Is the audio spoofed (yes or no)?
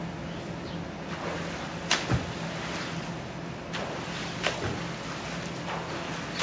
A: no